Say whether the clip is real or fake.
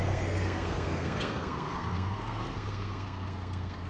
fake